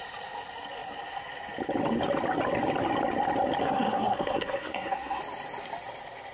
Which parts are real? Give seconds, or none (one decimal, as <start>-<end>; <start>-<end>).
0.0-3.6; 5.2-6.3